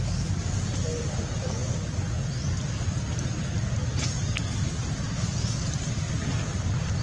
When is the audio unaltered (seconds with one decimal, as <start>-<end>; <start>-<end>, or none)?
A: 0.0-7.0